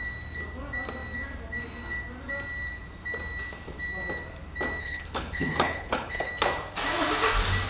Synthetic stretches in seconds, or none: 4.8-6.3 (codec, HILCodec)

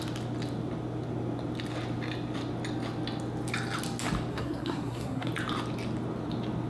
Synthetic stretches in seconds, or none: 4.3-5.3 (codec, SNAC)

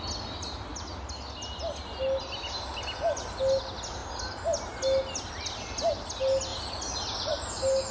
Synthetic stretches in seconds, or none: none

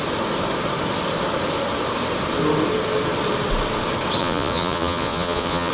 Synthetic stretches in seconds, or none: 4.2-5.7 (vocoder, Vocos)

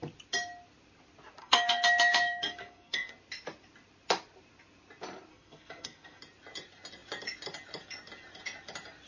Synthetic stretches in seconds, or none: 1.4-3.1 (codec, SNAC); 5.3-6.2

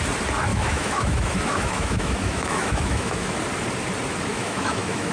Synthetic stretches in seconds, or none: 0.5-3.4 (autoencoder, DAC-VAE); 4.3-5.1

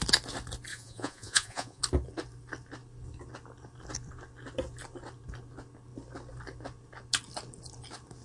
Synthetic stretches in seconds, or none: 0.7-1.8 (vocoder, Vocos)

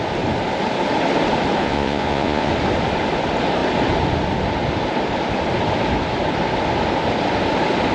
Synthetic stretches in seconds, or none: 1.6-2.5 (vocoder, Vocos)